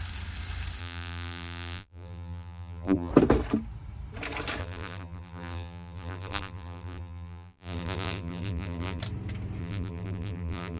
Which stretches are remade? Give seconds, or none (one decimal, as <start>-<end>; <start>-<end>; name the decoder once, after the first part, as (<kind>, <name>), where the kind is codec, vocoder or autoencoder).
0.8-3.1 (vocoder, BigVGAN v2); 4.6-9.0; 9.6-10.8